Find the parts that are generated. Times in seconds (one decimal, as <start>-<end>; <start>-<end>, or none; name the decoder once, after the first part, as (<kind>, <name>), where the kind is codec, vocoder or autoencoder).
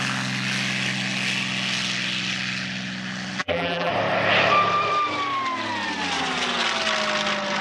3.4-3.9 (vocoder, BigVGAN v2)